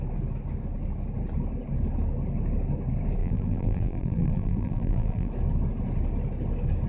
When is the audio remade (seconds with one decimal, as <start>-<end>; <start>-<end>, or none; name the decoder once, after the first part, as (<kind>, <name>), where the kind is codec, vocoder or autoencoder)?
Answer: 3.2-5.3 (vocoder, BigVGAN v2)